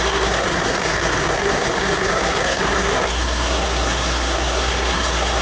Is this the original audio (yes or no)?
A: no